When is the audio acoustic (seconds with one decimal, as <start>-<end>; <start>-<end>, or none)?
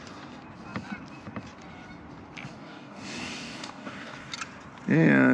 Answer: 0.0-2.5; 4.3-5.3